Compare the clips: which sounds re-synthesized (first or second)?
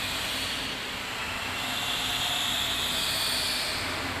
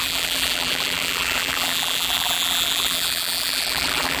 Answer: second